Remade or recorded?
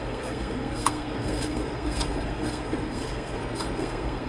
remade